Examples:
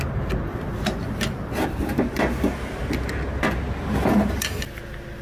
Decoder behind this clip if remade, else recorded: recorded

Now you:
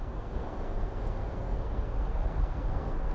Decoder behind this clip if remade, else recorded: remade, codec, SNAC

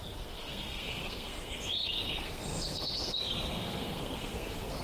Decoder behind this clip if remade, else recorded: remade, codec, SNAC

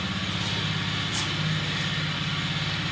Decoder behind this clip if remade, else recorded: recorded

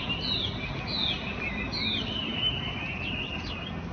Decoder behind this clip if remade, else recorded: recorded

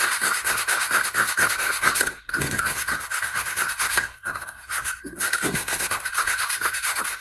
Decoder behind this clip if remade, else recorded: remade, codec, SNAC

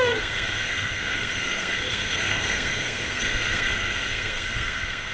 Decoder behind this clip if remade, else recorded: remade, codec, SNAC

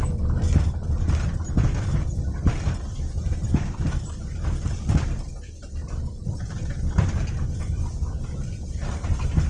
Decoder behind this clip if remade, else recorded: recorded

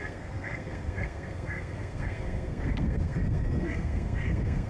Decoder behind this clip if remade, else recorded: remade, codec, SNAC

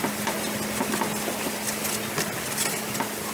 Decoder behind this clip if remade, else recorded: recorded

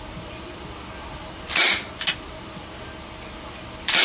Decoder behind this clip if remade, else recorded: recorded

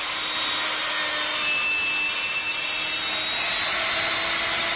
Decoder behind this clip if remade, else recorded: recorded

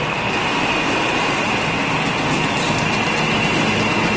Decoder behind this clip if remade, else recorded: recorded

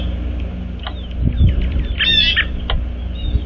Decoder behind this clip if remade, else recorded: recorded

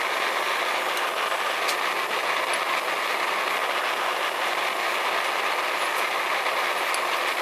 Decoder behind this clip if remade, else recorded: recorded